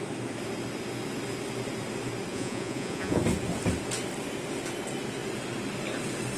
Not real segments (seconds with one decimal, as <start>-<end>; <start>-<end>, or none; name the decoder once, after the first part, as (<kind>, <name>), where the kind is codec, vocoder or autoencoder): 2.3-3.2 (vocoder, Vocos)